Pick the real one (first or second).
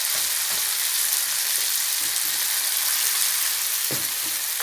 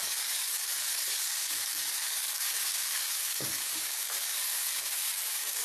first